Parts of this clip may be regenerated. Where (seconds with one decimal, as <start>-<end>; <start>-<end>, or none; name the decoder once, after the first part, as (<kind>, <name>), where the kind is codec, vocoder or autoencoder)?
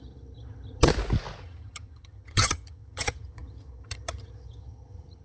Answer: 0.0-0.9 (vocoder, HiFi-GAN); 1.4-5.2